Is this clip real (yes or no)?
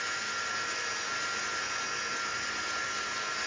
yes